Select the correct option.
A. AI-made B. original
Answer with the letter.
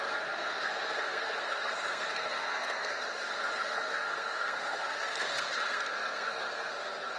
A